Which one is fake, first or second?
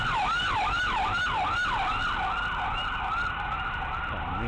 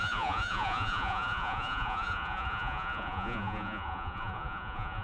second